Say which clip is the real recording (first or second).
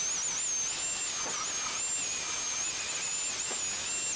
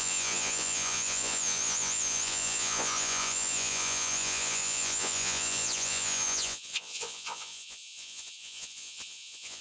first